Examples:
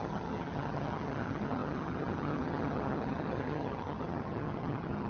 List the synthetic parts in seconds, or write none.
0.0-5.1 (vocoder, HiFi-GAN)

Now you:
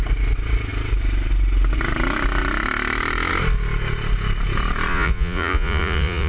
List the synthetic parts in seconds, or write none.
4.9-6.3 (vocoder, Vocos)

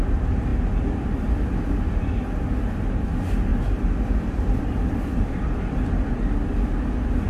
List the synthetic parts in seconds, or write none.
3.5-6.1 (vocoder, BigVGAN v2)

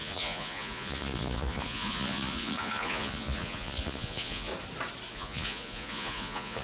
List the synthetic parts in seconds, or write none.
0.0-4.5 (vocoder, Vocos); 5.1-6.6

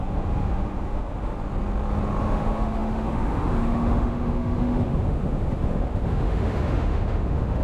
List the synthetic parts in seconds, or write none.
0.0-1.3 (autoencoder, DAC-VAE); 2.2-7.6

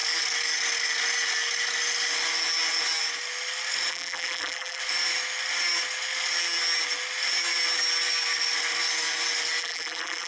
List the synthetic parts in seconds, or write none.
3.9-4.8 (vocoder, BigVGAN v2); 9.6-10.3